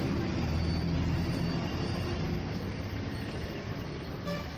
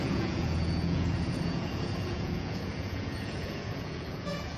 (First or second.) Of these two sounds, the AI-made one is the second